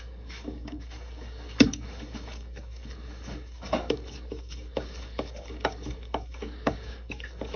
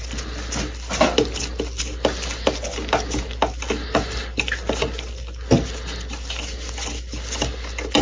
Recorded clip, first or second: second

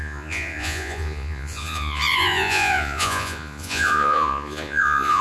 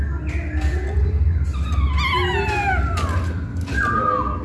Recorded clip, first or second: second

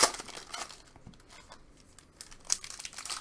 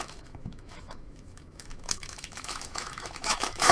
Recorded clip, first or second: first